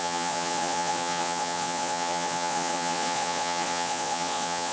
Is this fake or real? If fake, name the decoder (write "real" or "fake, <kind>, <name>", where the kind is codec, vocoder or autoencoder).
fake, vocoder, Vocos